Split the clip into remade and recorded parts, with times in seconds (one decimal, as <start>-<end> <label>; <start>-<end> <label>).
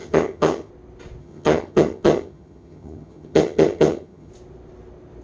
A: 0.0-0.7 remade; 0.7-1.2 recorded; 1.2-4.3 remade; 4.3-5.2 recorded